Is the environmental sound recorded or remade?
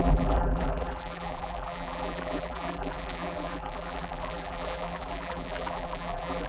remade